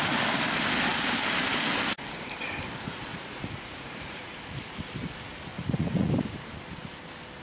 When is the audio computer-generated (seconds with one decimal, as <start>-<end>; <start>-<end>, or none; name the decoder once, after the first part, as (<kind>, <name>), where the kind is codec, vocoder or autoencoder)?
3.1-4.4 (vocoder, Vocos); 5.5-6.1